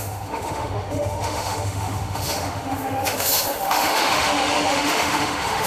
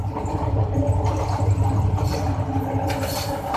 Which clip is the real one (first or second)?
second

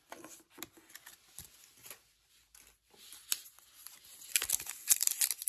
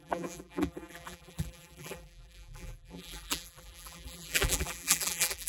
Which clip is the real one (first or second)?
first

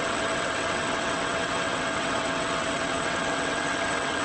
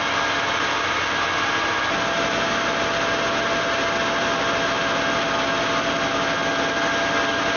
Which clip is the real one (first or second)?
second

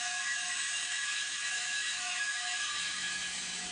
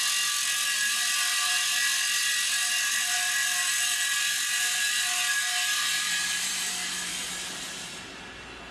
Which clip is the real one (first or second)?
second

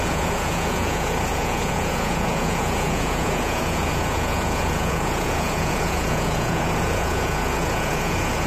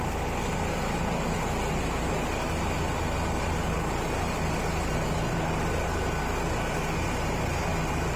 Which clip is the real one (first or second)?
second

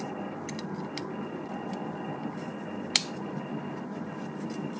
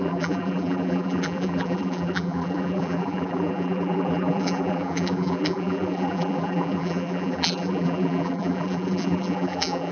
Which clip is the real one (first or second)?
first